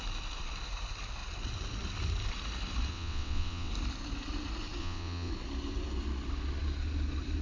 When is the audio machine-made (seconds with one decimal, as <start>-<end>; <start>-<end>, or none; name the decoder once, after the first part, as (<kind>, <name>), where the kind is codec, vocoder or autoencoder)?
2.9-3.7 (vocoder, WaveNeXt); 4.8-5.3

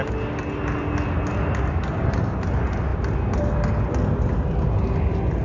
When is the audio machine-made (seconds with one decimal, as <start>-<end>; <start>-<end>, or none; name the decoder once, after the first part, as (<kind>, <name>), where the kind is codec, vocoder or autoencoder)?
none

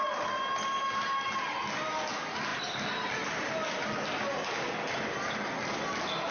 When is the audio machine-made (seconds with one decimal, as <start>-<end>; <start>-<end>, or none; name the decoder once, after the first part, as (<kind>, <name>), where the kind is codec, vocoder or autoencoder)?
none

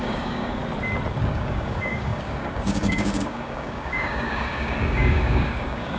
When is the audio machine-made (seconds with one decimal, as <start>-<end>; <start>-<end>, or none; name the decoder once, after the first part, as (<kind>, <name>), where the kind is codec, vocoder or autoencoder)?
0.0-0.6 (codec, DAC); 1.2-6.0

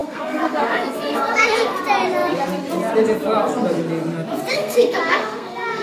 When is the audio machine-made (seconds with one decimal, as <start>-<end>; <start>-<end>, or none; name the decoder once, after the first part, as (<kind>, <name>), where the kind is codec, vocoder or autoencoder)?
0.0-1.8 (codec, SNAC); 4.5-5.8